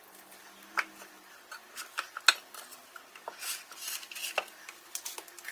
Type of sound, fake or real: real